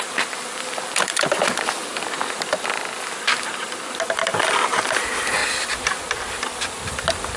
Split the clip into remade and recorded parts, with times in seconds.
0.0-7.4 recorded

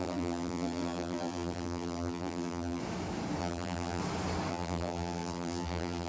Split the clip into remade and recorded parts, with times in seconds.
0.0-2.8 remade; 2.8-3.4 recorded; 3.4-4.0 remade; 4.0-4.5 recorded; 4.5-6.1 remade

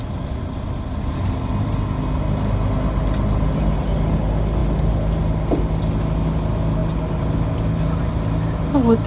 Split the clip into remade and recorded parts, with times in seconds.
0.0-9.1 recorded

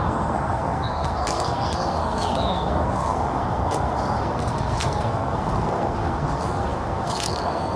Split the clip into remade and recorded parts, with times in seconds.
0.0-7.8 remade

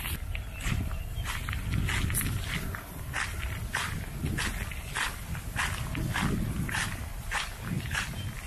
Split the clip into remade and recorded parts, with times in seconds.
0.0-8.5 recorded

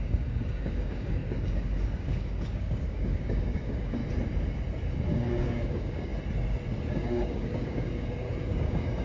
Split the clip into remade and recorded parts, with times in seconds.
0.0-4.0 remade; 4.0-5.1 recorded; 5.1-6.1 remade; 6.1-6.9 recorded; 6.9-9.0 remade

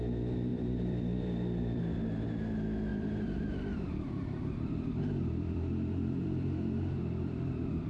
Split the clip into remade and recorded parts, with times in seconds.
0.0-0.5 recorded; 0.5-1.8 remade; 1.8-2.9 recorded; 2.9-7.9 remade